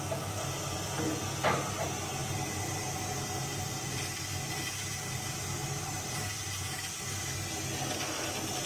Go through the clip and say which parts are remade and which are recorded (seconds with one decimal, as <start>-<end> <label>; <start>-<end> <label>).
0.0-2.2 recorded; 2.2-3.0 remade; 3.0-4.8 recorded; 4.8-6.8 remade; 6.8-8.7 recorded